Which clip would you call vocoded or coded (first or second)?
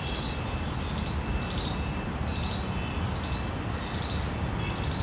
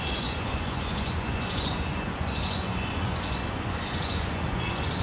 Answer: second